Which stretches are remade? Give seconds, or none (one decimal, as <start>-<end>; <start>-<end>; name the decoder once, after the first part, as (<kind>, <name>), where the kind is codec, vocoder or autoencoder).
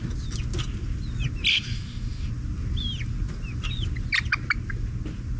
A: 1.5-2.3 (autoencoder, DAC-VAE)